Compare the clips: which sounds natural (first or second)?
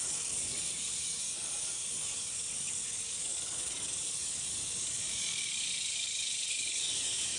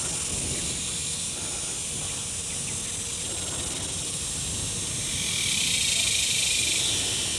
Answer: second